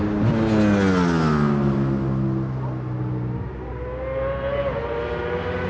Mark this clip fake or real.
real